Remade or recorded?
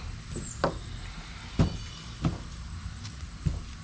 recorded